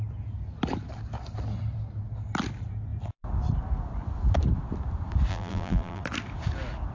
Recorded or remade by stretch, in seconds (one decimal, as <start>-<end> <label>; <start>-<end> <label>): 0.0-5.3 recorded; 5.3-6.0 remade; 6.0-6.9 recorded